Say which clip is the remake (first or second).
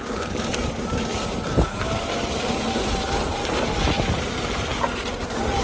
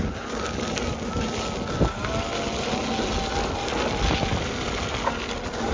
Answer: first